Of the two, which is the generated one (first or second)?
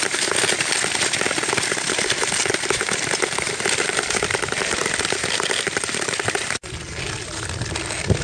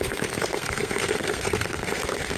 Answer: second